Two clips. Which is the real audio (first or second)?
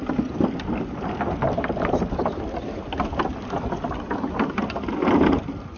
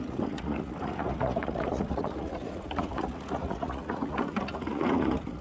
first